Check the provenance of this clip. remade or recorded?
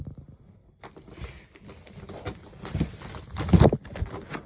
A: recorded